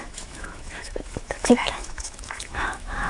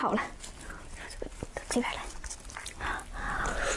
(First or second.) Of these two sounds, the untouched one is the second